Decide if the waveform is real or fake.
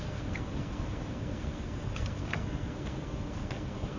fake